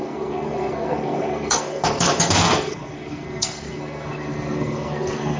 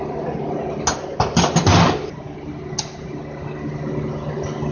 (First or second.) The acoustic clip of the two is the second